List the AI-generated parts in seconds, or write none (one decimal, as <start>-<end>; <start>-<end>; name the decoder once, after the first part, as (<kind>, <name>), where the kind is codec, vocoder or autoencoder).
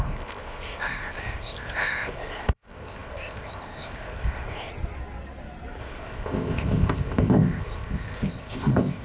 0.0-4.7 (codec, ZipCodec); 5.8-9.0